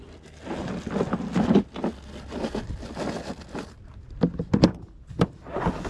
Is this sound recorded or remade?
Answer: recorded